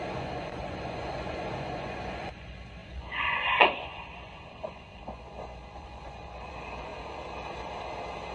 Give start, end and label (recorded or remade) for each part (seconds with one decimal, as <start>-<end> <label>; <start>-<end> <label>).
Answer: 0.0-6.9 remade; 6.9-8.3 recorded